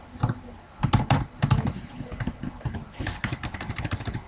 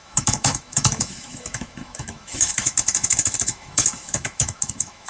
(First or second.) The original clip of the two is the first